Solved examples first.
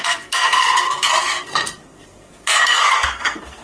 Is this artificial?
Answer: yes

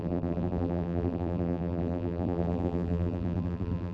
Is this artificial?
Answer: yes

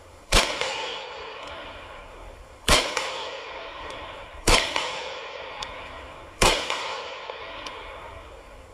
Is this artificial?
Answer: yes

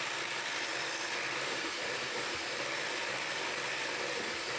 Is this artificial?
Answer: no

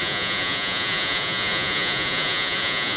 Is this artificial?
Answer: yes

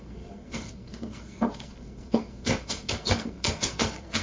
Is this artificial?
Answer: yes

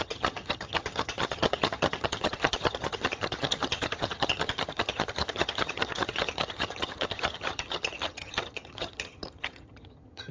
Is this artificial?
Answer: yes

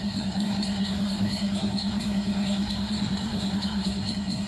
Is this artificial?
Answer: yes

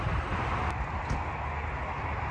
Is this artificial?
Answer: no